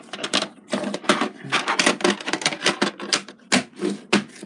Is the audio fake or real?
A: real